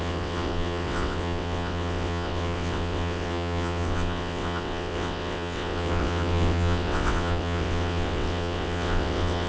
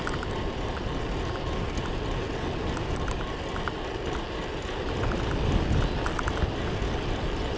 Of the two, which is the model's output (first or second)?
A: first